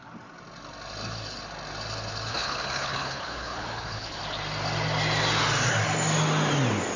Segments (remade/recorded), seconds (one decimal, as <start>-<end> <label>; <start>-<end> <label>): 0.0-2.3 recorded; 2.3-4.2 remade; 4.2-7.0 recorded